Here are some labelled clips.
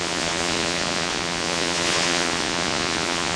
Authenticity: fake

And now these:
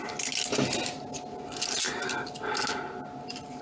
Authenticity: real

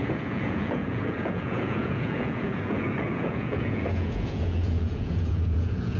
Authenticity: fake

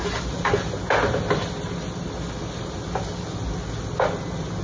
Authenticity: real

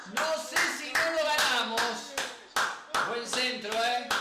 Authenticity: real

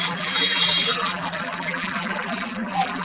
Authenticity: fake